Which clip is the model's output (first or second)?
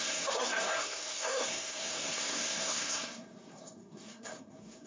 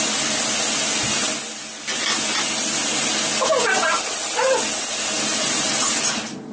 first